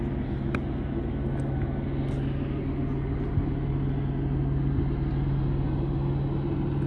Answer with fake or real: real